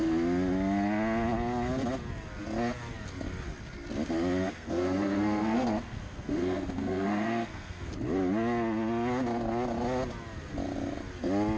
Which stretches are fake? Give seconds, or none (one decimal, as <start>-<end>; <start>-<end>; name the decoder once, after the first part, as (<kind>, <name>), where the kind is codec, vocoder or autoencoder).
4.5-7.9 (codec, SNAC)